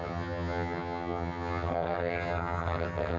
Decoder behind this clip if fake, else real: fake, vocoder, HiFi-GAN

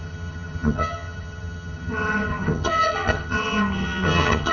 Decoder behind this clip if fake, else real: fake, vocoder, HiFi-GAN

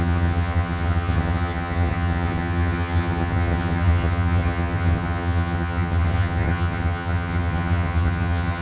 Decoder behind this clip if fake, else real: fake, vocoder, HiFi-GAN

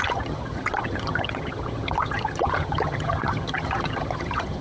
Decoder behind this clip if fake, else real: fake, vocoder, HiFi-GAN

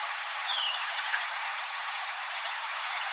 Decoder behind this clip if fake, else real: fake, vocoder, HiFi-GAN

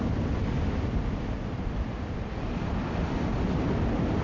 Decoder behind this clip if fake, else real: real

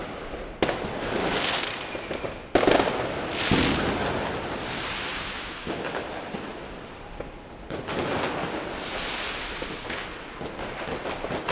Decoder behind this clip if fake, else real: real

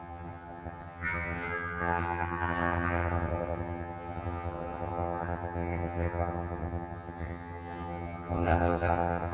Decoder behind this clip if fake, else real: fake, vocoder, HiFi-GAN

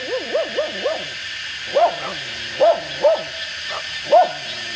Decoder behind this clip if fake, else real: real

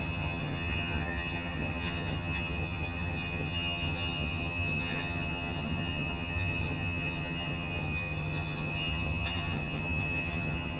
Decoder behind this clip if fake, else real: fake, vocoder, HiFi-GAN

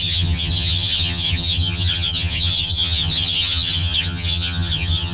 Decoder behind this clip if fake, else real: fake, vocoder, HiFi-GAN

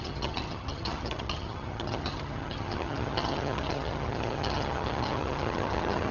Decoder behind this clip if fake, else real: fake, vocoder, HiFi-GAN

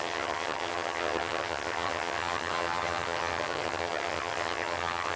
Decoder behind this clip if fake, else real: fake, vocoder, HiFi-GAN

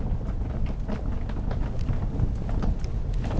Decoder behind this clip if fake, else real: real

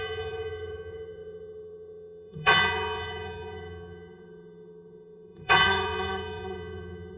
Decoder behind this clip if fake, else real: fake, vocoder, HiFi-GAN